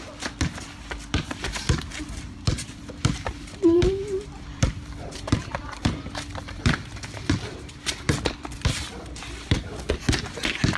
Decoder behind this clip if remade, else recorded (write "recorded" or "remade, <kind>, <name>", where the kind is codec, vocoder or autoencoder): remade, vocoder, BigVGAN v2